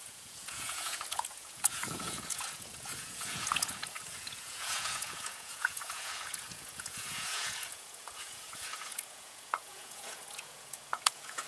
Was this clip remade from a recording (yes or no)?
yes